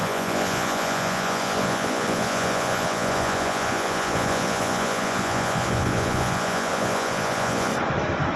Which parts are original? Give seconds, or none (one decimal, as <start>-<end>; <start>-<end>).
7.7-8.4